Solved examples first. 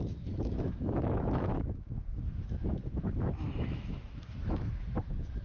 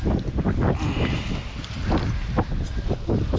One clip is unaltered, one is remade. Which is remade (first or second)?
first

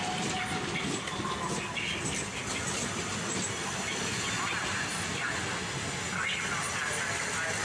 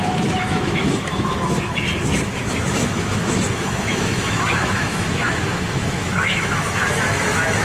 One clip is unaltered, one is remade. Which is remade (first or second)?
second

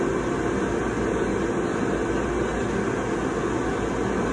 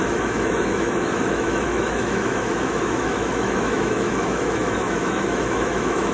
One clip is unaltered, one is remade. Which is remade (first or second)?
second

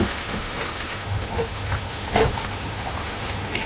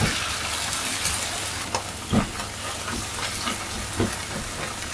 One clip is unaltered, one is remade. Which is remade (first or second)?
first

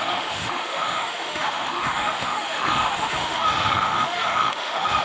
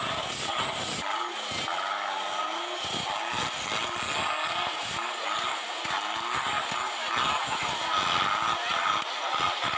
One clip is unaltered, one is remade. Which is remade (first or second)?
first